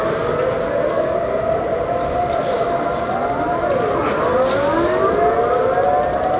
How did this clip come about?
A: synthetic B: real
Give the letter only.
B